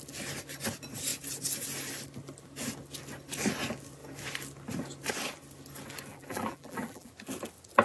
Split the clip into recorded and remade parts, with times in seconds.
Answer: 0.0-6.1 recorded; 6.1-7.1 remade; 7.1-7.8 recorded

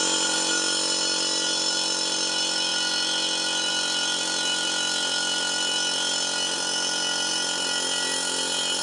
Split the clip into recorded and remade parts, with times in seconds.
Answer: 0.0-8.8 recorded

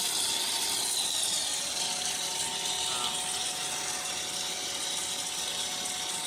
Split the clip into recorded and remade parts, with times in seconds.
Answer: 0.0-6.3 recorded

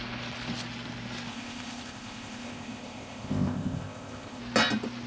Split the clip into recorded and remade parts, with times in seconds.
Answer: 0.0-1.3 recorded; 1.3-4.4 remade; 4.4-5.1 recorded

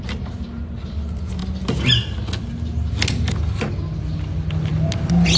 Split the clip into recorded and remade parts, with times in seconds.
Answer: 0.0-5.4 recorded

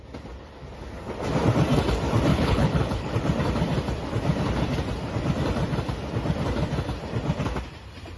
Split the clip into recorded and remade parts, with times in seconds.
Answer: 0.0-2.3 recorded; 2.3-3.1 remade; 3.1-8.2 recorded